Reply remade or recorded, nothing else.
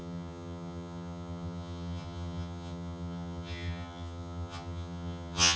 remade